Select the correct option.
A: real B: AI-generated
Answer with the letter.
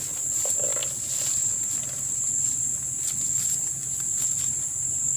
A